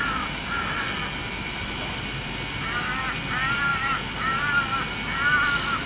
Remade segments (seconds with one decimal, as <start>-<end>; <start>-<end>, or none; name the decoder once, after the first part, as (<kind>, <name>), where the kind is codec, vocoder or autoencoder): none